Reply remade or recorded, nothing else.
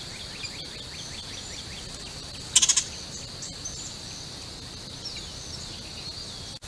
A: recorded